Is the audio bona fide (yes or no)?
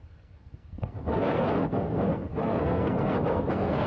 no